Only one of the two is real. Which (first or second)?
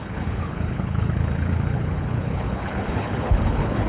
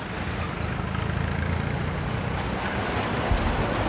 second